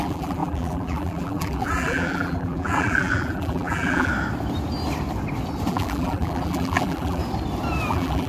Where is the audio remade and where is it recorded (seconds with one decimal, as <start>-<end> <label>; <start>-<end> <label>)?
0.0-4.1 remade; 4.1-5.7 recorded; 5.7-7.2 remade; 7.2-7.9 recorded; 7.9-8.3 remade